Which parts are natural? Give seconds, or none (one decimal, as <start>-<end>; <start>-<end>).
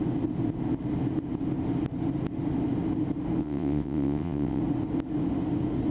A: 0.0-3.4; 4.6-5.9